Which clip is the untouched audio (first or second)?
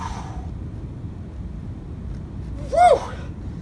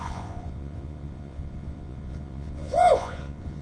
first